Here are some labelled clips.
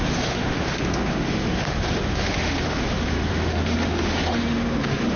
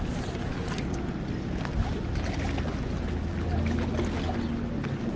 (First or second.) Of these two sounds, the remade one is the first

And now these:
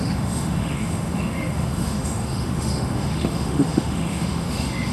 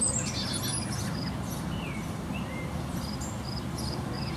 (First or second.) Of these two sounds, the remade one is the first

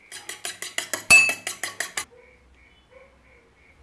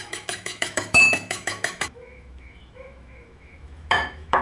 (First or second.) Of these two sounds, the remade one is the second